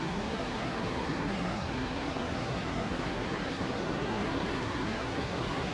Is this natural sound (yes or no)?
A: no